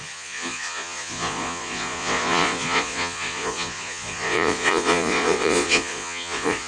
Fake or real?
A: fake